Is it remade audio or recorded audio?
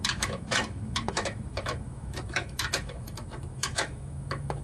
remade